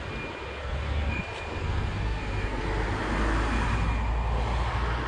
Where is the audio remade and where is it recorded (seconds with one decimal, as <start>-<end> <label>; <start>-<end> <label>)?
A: 0.0-0.6 recorded; 0.6-1.2 remade; 1.2-1.6 recorded; 1.6-2.6 remade; 2.6-5.1 recorded